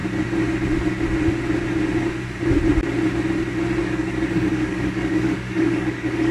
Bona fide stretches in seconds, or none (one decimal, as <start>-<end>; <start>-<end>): 0.0-3.8